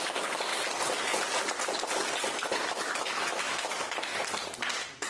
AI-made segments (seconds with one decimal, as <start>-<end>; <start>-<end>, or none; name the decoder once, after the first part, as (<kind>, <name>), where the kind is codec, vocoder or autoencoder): 0.0-0.5 (autoencoder, DAC-VAE); 2.7-4.1